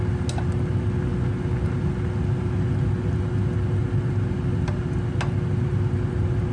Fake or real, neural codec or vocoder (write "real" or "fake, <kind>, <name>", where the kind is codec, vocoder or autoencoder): real